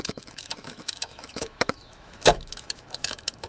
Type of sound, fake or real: fake